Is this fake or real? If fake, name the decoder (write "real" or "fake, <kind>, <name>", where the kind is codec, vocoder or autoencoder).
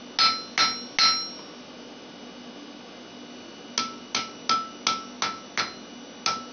real